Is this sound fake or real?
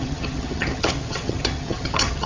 fake